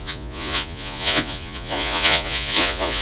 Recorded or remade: remade